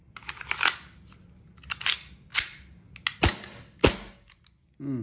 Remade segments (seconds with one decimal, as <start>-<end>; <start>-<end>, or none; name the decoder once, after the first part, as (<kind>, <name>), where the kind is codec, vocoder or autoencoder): none